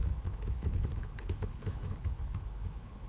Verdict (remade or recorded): remade